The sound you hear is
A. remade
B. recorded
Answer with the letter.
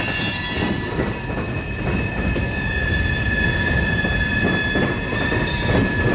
B